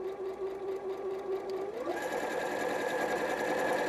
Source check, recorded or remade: recorded